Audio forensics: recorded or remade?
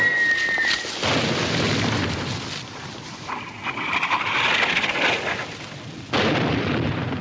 recorded